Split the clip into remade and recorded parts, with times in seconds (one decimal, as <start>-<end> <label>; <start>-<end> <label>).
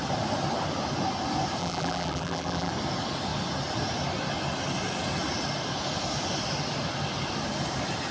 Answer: 0.0-1.6 recorded; 1.6-2.7 remade; 2.7-8.1 recorded